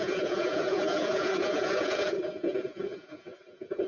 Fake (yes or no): yes